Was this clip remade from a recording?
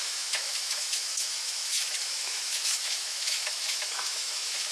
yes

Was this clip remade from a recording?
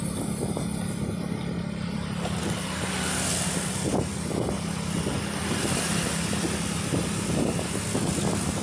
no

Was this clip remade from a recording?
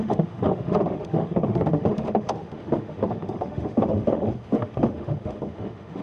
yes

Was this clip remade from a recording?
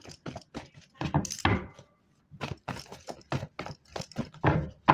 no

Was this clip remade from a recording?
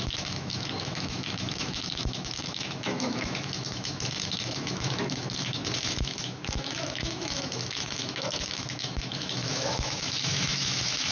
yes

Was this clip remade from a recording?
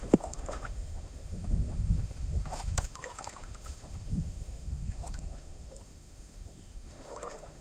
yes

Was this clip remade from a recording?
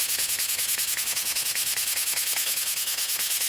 yes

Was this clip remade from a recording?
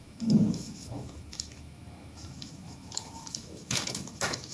yes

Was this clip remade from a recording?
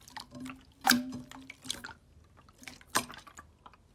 no